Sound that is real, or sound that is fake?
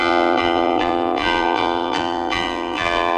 fake